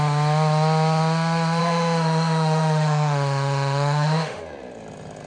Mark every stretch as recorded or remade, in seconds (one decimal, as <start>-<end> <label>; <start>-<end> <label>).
0.0-1.6 recorded; 1.6-4.4 remade; 4.4-5.3 recorded